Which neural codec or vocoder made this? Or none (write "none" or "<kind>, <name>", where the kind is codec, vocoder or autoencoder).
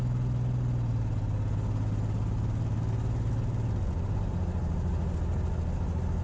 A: none